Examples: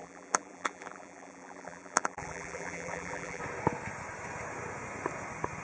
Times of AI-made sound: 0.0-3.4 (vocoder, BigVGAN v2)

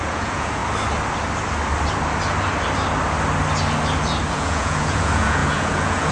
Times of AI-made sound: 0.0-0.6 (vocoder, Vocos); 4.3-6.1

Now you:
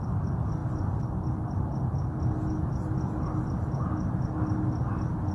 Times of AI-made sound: none

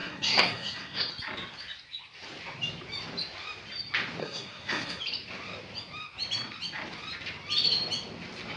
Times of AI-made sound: 0.0-1.1 (codec, SNAC); 4.2-5.0

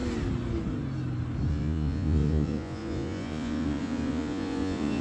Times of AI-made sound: 1.5-5.0 (vocoder, Vocos)